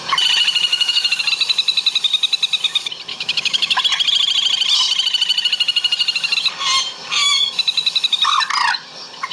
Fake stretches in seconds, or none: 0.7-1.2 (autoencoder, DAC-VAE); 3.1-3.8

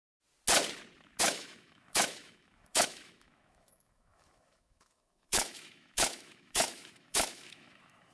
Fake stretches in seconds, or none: 1.2-8.1 (autoencoder, DAC-VAE)

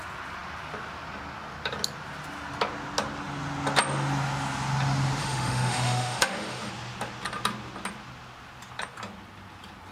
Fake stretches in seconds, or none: 5.2-6.7 (autoencoder, DAC-VAE)

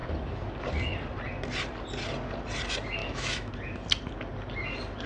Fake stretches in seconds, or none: 3.0-3.5 (autoencoder, DAC-VAE)

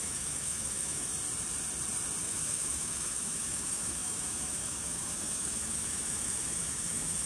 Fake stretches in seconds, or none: 0.0-1.1 (autoencoder, DAC-VAE); 2.2-7.3